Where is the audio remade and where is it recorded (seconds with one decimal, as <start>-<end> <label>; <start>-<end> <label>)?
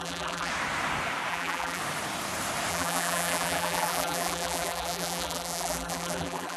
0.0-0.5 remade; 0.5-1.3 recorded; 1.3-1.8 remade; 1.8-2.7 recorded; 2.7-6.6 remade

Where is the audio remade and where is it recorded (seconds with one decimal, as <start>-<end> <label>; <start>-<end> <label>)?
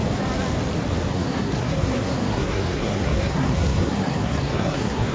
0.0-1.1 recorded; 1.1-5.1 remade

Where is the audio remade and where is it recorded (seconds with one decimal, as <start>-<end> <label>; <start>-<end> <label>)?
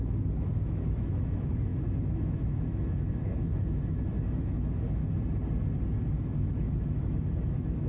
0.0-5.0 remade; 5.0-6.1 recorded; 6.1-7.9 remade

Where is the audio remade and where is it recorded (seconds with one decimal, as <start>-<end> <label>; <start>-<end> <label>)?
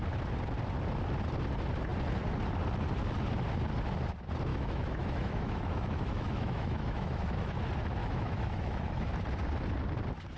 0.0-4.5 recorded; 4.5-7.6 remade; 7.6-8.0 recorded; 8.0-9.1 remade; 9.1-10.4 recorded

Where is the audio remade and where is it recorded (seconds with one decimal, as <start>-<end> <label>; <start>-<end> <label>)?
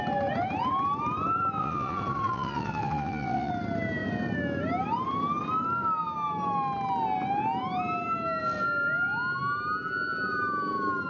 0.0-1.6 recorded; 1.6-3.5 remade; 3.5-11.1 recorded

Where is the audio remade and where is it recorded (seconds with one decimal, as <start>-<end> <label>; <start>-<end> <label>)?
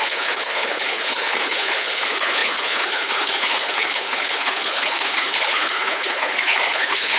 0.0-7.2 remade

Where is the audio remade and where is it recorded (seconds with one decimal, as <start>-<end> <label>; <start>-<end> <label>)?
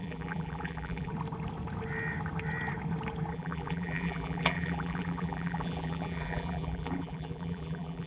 0.0-1.1 remade; 1.1-3.3 recorded; 3.3-8.1 remade